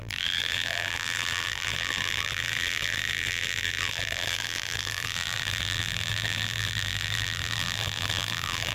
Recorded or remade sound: remade